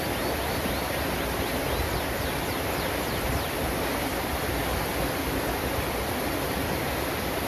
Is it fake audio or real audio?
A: real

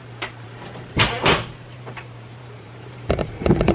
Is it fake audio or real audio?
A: fake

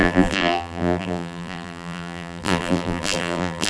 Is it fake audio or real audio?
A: fake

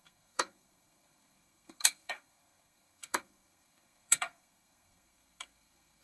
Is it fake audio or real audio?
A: fake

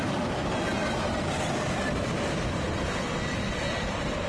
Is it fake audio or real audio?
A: real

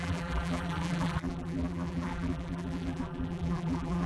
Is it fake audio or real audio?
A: fake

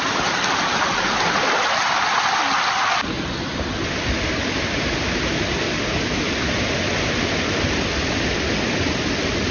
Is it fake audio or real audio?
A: real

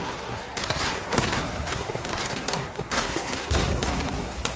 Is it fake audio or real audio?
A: fake